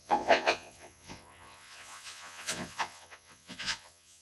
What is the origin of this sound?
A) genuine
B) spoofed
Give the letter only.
B